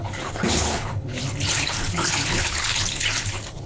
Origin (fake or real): fake